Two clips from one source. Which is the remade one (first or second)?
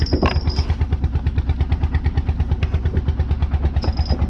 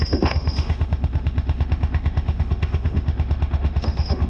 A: second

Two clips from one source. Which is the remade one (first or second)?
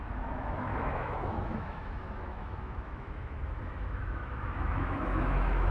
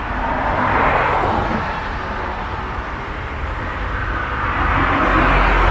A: first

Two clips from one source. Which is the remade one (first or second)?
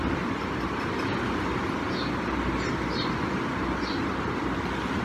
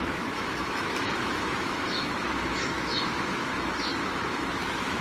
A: second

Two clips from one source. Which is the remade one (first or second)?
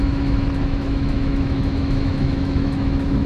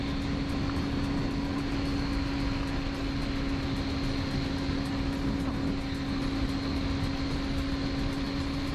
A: first